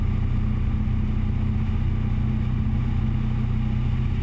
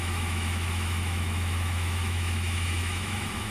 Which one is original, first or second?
first